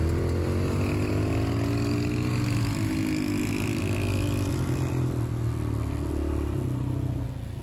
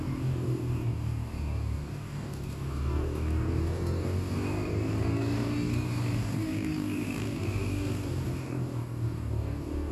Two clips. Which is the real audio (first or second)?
first